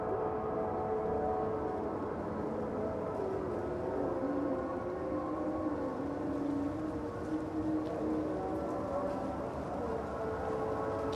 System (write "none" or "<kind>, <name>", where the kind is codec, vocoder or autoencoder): none